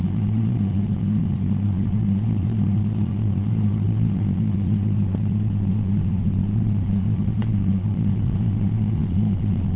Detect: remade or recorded remade